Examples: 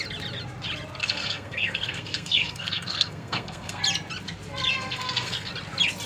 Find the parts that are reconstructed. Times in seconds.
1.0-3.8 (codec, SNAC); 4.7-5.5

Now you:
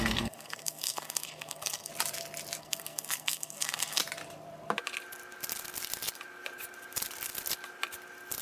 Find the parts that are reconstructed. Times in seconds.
0.0-1.9 (codec, SNAC); 2.6-4.0

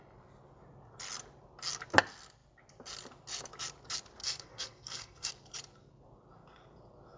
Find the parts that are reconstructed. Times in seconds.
4.2-5.3 (codec, SNAC)

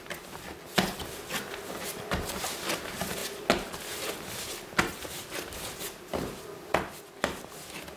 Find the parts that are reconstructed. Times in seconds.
none

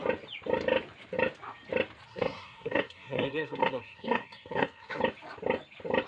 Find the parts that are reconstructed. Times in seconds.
2.1-5.0 (codec, SNAC)

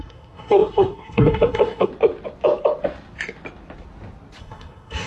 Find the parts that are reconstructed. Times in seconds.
0.0-1.9 (codec, SNAC); 4.4-5.1

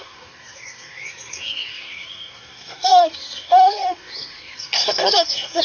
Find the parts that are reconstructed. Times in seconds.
0.0-5.6 (codec, SNAC)